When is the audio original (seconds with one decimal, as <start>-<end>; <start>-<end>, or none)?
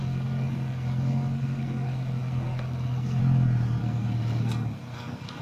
3.2-3.8